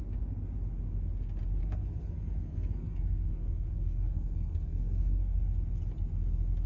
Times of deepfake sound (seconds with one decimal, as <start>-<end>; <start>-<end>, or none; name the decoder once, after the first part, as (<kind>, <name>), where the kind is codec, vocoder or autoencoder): 1.6-5.6 (codec, SNAC)